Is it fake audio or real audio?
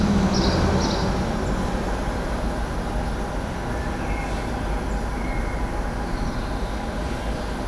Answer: real